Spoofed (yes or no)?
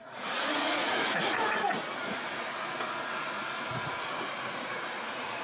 yes